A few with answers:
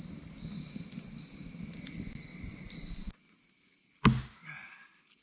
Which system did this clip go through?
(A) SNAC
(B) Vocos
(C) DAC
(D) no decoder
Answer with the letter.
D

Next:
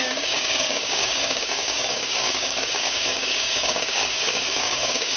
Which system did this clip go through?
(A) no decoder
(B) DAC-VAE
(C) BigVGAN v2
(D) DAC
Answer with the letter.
D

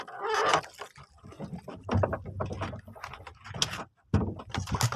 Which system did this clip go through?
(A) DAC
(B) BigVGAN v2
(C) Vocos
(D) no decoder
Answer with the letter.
D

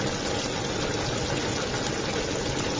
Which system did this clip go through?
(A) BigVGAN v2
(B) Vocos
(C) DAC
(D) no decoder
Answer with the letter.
D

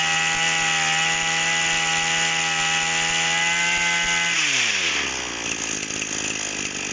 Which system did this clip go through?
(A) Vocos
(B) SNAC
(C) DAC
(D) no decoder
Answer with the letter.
D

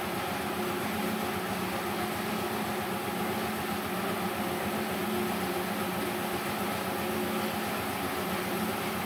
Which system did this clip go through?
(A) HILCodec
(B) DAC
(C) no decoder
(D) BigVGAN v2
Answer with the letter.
C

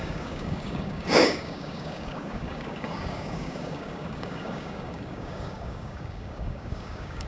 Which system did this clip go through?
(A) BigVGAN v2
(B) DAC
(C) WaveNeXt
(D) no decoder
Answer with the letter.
B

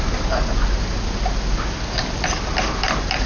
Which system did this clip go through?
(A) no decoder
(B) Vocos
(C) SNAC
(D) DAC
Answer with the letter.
A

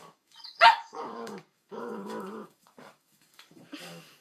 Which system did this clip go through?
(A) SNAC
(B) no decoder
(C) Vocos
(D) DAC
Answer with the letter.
D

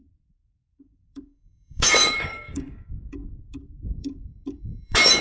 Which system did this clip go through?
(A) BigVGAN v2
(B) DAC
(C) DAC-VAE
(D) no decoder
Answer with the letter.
B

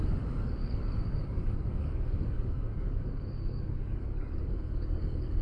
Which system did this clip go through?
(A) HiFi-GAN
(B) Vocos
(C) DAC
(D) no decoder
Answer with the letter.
C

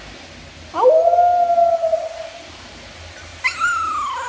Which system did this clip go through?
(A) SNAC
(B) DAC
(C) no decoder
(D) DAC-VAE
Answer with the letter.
C